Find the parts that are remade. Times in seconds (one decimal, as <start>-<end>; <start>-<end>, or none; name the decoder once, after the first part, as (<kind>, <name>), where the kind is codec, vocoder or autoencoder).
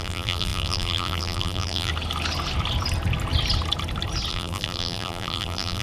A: 0.0-1.9 (vocoder, BigVGAN v2); 4.3-5.8